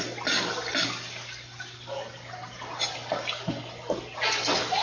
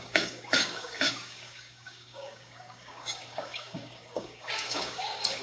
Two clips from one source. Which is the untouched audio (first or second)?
first